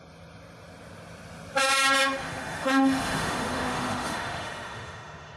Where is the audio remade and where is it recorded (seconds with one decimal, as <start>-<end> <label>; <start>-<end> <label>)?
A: 0.0-2.0 recorded; 2.0-5.4 remade